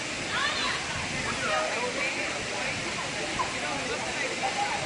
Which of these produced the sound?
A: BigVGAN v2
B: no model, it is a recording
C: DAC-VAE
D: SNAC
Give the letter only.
B